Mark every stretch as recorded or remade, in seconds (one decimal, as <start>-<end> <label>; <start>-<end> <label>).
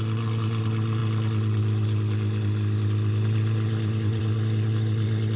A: 0.0-5.4 recorded